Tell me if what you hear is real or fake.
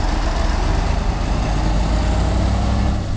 real